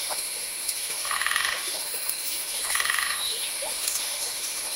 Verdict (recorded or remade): remade